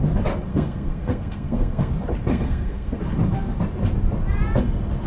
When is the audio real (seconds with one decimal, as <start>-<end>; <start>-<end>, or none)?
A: 0.0-0.5; 1.9-2.3; 3.0-5.1